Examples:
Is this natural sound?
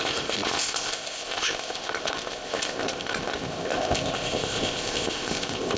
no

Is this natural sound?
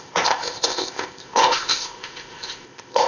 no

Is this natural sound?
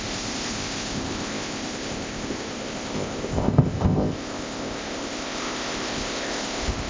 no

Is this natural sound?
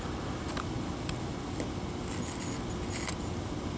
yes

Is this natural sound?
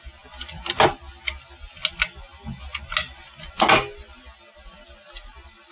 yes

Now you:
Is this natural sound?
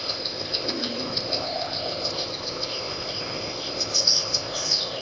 no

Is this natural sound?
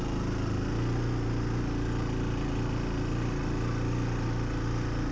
yes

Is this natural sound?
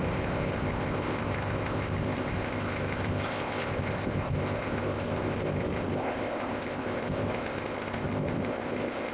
no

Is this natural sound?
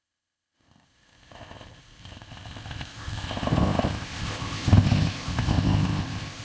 no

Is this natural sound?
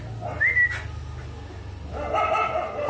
yes